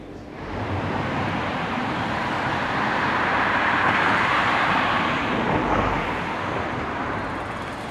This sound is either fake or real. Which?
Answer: fake